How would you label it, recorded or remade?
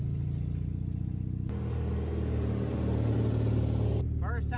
recorded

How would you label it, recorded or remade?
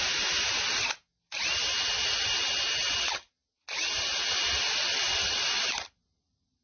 recorded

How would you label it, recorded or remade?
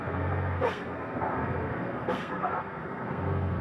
remade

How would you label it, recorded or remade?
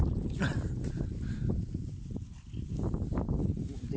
recorded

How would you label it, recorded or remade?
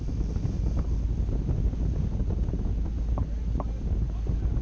recorded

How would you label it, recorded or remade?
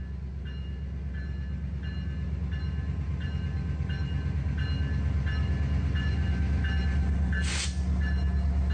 recorded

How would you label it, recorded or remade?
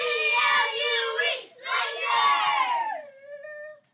recorded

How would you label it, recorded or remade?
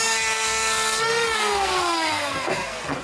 remade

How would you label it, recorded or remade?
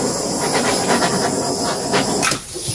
recorded